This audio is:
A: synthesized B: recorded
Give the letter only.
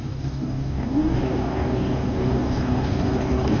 A